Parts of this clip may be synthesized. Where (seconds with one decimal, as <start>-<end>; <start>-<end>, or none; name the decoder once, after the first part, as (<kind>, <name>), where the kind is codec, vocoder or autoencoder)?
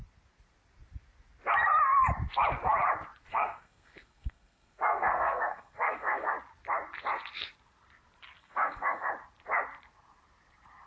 3.3-6.3 (codec, SNAC); 8.4-9.1